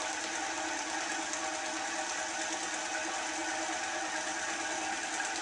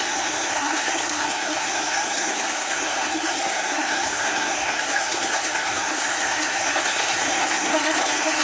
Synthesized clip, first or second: second